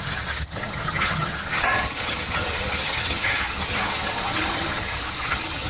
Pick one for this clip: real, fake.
fake